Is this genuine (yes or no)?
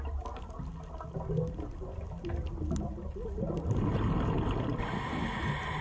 yes